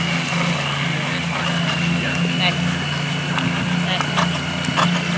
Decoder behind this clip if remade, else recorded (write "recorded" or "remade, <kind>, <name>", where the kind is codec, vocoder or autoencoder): recorded